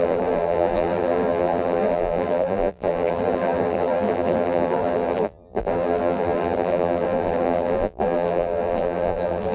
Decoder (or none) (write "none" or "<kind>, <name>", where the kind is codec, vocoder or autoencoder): vocoder, BigVGAN v2